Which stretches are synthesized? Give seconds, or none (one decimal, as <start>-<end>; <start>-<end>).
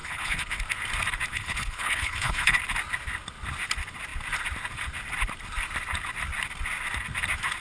0.0-0.6; 1.3-2.6